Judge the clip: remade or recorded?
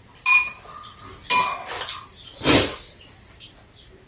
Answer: recorded